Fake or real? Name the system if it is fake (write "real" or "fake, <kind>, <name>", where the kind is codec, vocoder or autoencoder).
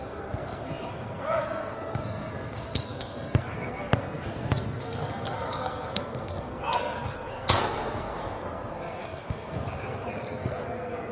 fake, codec, SNAC